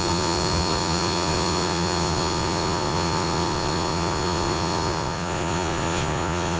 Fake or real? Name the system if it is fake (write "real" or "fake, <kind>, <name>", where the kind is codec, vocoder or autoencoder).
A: fake, vocoder, Vocos